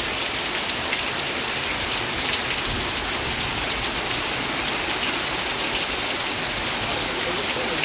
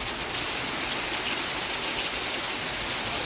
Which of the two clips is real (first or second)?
second